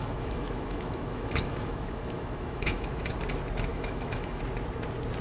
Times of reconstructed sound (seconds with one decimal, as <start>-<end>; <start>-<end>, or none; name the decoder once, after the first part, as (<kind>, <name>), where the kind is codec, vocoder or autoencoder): 0.0-3.1 (autoencoder, DAC-VAE); 3.7-4.4